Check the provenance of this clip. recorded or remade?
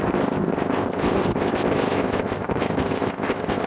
remade